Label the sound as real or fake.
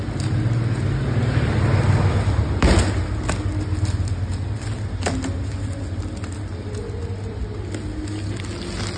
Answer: real